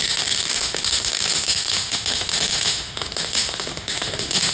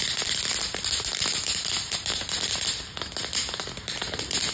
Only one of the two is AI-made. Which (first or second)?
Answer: first